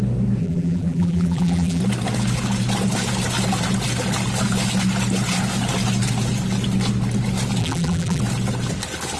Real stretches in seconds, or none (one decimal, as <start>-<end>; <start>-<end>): 0.0-0.4; 1.8-7.6; 8.2-9.2